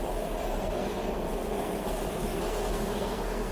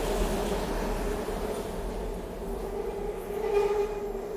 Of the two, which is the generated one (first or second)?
first